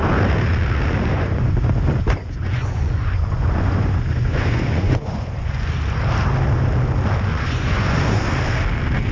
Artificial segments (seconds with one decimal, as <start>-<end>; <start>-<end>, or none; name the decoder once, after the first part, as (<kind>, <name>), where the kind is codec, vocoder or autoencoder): 1.1-5.7 (vocoder, Vocos); 7.3-8.2

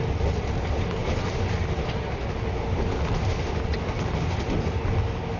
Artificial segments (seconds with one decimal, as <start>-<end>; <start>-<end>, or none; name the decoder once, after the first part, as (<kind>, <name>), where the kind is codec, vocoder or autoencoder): none

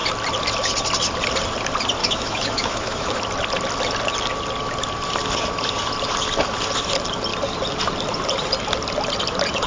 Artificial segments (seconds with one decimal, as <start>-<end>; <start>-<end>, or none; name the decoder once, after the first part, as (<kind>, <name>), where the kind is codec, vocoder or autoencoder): 2.0-3.2 (autoencoder, DAC-VAE)

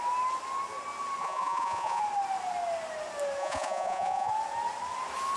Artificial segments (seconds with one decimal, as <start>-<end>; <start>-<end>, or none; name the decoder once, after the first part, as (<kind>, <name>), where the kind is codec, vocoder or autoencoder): 1.2-2.0 (vocoder, Vocos); 3.4-4.3

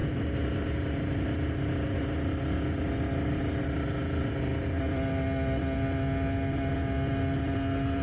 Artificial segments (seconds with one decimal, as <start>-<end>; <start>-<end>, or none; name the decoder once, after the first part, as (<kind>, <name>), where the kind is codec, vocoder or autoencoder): none

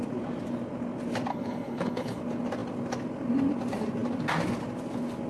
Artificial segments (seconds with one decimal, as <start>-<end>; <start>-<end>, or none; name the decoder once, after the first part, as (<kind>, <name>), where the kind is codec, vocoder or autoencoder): 1.3-2.2 (codec, HILCodec)

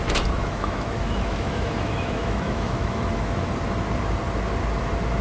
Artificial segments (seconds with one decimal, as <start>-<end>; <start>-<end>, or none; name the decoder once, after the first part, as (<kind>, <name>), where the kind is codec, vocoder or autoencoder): 0.4-3.5 (autoencoder, DAC-VAE)

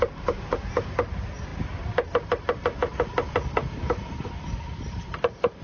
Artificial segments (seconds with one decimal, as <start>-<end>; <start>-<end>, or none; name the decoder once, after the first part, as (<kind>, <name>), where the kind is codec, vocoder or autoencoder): none